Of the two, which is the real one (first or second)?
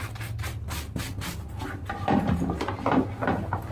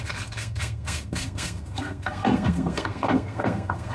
first